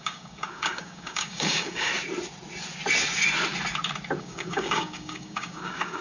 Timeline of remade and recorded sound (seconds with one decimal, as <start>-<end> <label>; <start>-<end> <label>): 0.0-1.9 remade; 1.9-4.2 recorded; 4.2-6.0 remade

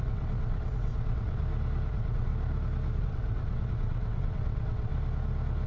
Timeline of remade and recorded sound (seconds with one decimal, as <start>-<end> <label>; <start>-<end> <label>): 0.0-1.4 remade; 1.4-1.9 recorded; 1.9-2.3 remade; 2.3-3.0 recorded; 3.0-4.9 remade; 4.9-5.7 recorded